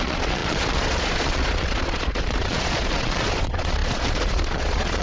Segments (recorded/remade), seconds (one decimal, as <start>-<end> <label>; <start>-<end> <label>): 0.0-5.0 remade